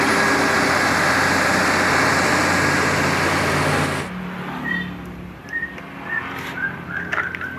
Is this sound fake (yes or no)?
no